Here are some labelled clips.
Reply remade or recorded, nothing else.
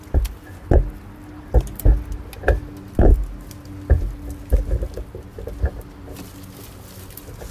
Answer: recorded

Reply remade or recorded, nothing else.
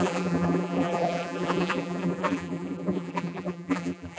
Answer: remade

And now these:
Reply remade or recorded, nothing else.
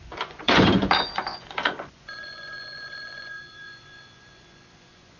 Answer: remade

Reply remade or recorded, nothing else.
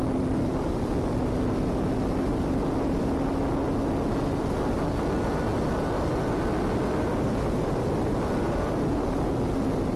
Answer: recorded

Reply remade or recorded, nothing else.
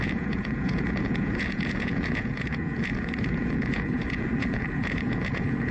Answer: remade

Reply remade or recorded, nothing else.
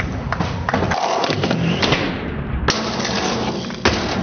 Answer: recorded